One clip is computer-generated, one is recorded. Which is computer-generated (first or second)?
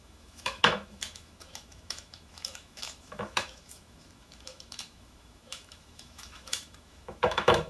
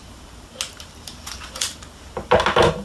first